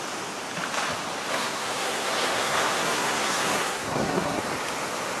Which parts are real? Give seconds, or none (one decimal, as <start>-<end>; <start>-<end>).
0.0-1.3; 4.4-5.2